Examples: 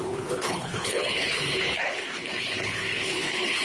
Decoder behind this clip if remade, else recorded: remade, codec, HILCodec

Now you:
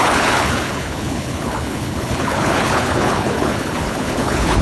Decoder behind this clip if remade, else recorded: remade, codec, HILCodec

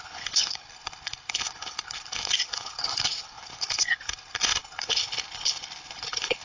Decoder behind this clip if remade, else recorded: remade, codec, HILCodec